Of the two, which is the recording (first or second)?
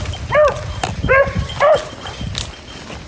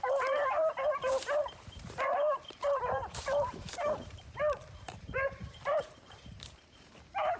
first